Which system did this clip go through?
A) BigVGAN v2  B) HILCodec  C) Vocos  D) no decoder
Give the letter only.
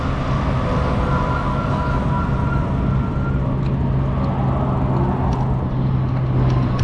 D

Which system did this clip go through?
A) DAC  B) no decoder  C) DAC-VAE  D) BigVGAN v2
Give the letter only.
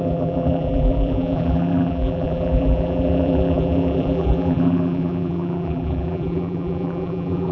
D